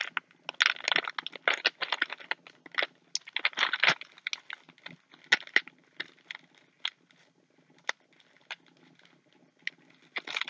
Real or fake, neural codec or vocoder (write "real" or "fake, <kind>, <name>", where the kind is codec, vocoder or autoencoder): real